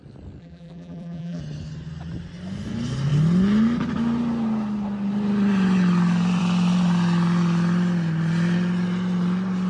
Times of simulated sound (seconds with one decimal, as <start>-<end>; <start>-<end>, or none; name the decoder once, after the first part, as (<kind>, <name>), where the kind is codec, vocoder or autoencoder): 0.4-1.4 (vocoder, BigVGAN v2)